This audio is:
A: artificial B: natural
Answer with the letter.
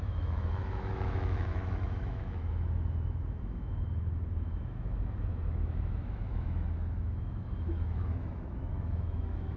A